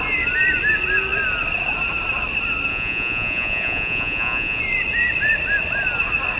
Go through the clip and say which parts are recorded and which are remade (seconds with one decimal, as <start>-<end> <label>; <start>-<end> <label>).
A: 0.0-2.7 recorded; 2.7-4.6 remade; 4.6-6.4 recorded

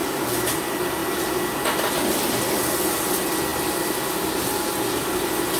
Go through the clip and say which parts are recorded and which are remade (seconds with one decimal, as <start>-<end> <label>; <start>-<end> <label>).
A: 0.0-0.6 remade; 0.6-5.6 recorded

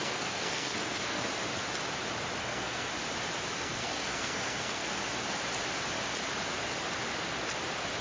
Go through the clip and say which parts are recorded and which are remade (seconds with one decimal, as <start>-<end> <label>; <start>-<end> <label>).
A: 0.0-1.3 remade; 1.3-2.4 recorded; 2.4-2.9 remade; 2.9-3.6 recorded; 3.6-5.0 remade; 5.0-8.0 recorded

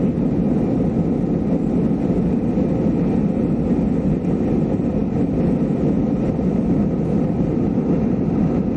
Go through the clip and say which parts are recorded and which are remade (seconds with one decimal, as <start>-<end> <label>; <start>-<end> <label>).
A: 0.0-5.0 recorded; 5.0-6.4 remade; 6.4-8.8 recorded

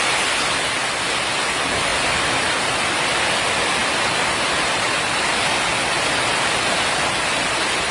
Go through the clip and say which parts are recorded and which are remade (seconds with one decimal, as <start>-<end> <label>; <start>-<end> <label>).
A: 0.0-1.9 recorded; 1.9-3.0 remade; 3.0-3.8 recorded; 3.8-4.6 remade; 4.6-7.9 recorded

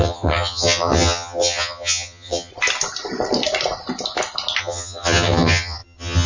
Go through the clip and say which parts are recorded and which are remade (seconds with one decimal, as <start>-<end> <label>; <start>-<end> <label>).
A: 0.0-2.5 remade; 2.5-4.6 recorded; 4.6-6.3 remade

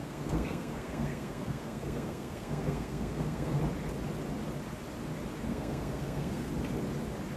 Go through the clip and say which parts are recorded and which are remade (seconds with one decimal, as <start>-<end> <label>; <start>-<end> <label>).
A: 0.0-3.6 remade; 3.6-5.5 recorded; 5.5-6.5 remade; 6.5-7.4 recorded

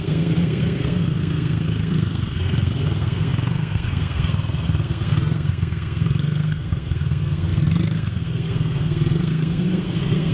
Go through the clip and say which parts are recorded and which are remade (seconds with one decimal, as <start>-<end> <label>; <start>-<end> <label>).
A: 0.0-10.3 remade